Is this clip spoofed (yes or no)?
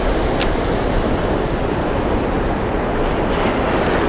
no